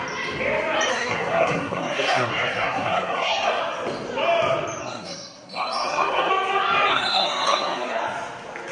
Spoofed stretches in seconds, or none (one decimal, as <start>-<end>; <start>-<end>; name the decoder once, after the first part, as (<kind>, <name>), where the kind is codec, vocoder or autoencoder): 0.9-3.6 (codec, SNAC); 4.8-6.3; 6.9-8.0